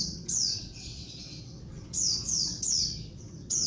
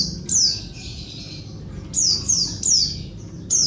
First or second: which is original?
second